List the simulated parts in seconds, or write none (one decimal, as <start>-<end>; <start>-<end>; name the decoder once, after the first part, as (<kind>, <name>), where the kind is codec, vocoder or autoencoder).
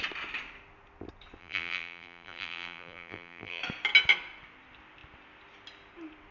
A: 1.4-3.6 (vocoder, BigVGAN v2)